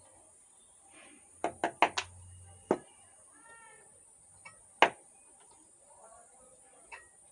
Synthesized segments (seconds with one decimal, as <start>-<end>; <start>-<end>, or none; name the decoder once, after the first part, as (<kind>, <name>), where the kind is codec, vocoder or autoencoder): none